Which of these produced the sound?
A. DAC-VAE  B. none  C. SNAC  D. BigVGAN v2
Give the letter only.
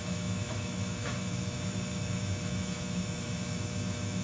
A